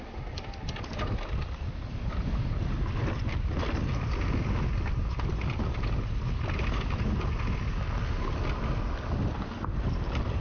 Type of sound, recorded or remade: recorded